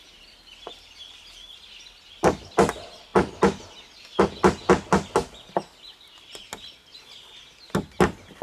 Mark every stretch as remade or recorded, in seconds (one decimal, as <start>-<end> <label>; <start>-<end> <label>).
0.0-8.4 recorded